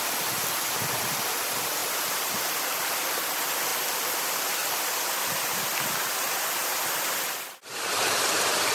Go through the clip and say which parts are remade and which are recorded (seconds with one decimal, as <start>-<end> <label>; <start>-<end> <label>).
0.0-1.8 recorded; 1.8-2.4 remade; 2.4-7.7 recorded; 7.7-8.7 remade